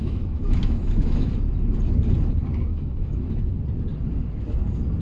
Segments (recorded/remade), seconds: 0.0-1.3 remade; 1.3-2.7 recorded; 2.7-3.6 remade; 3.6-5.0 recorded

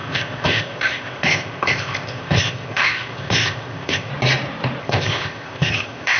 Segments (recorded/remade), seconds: 0.0-4.1 remade; 4.1-4.8 recorded; 4.8-6.2 remade

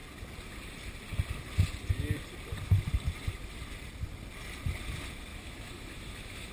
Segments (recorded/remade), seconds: 0.0-5.3 recorded; 5.3-6.5 remade